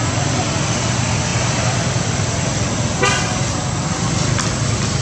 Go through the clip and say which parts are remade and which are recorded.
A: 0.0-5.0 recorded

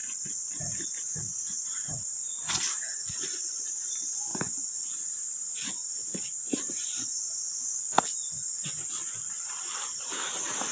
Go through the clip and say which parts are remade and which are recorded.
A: 0.0-10.7 recorded

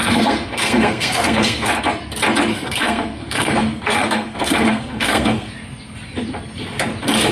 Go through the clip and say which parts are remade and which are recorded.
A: 0.0-1.7 remade; 1.7-2.5 recorded; 2.5-5.5 remade; 5.5-7.3 recorded

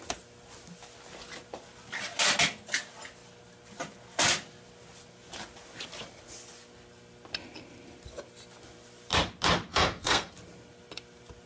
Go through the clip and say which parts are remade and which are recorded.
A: 0.0-9.7 recorded; 9.7-10.3 remade; 10.3-11.5 recorded

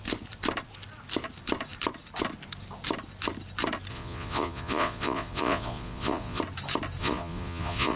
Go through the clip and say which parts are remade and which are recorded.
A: 0.0-3.9 recorded; 3.9-6.4 remade; 6.4-7.0 recorded; 7.0-8.0 remade

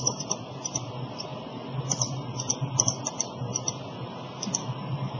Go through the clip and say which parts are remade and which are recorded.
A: 0.0-1.3 remade; 1.3-1.8 recorded; 1.8-2.5 remade; 2.5-4.6 recorded; 4.6-5.2 remade

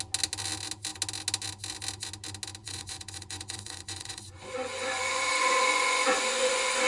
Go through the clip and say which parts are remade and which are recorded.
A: 0.0-2.6 recorded; 2.6-6.9 remade